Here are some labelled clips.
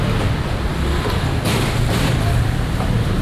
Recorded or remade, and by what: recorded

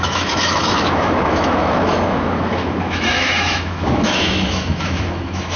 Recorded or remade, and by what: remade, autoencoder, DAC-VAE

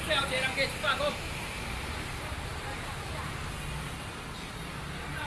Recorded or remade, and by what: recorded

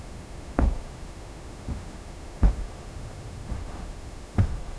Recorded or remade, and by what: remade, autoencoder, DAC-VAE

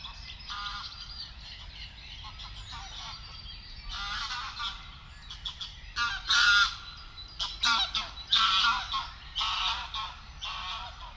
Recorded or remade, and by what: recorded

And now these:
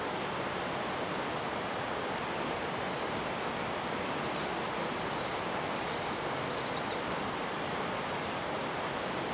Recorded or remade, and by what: recorded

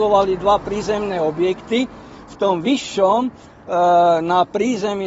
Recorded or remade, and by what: recorded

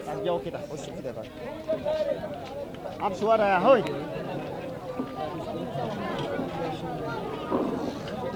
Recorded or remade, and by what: recorded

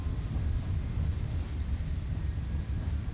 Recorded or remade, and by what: recorded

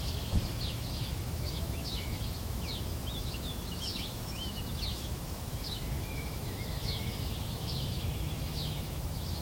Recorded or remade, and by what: remade, autoencoder, DAC-VAE